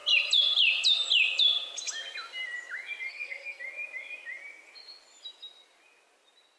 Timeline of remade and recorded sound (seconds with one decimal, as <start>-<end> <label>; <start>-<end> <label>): 0.0-3.1 recorded; 3.1-3.6 remade; 3.6-6.6 recorded

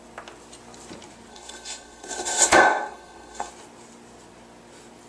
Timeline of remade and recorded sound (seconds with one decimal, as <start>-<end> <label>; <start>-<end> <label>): 0.0-1.3 recorded; 1.3-3.5 remade; 3.5-5.1 recorded

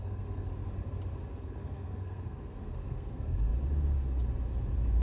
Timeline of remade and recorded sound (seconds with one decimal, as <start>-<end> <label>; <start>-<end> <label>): 0.0-0.5 remade; 0.5-1.4 recorded; 1.4-3.5 remade; 3.5-5.0 recorded

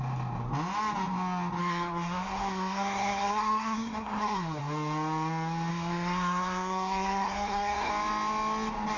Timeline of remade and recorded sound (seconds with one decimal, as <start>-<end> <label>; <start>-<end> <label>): 0.0-1.6 recorded; 1.6-4.6 remade; 4.6-5.7 recorded; 5.7-7.9 remade; 7.9-9.0 recorded

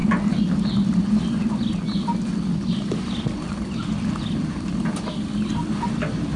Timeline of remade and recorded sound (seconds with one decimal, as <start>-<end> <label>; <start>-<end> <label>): 0.0-6.4 recorded

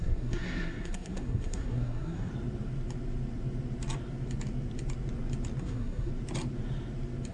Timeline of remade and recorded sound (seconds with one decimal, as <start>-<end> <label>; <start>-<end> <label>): 0.0-2.3 remade; 2.3-5.6 recorded; 5.6-6.1 remade; 6.1-7.3 recorded

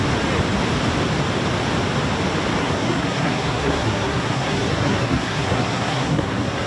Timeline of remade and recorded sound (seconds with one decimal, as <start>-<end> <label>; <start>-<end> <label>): 0.0-2.6 recorded; 2.6-6.7 remade

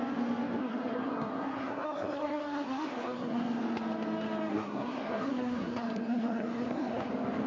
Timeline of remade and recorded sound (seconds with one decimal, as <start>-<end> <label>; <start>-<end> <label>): 0.0-0.6 recorded; 0.6-3.6 remade; 3.6-4.5 recorded; 4.5-7.1 remade; 7.1-7.5 recorded